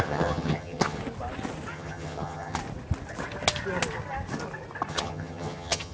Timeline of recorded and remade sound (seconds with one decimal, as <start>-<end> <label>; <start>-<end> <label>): 0.0-1.0 remade; 1.0-1.7 recorded; 1.7-2.6 remade; 2.6-4.9 recorded; 4.9-5.9 remade